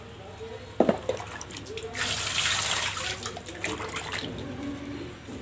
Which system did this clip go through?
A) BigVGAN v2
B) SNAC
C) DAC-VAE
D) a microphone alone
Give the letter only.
D